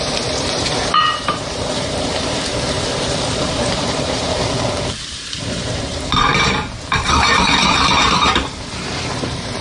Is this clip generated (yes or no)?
yes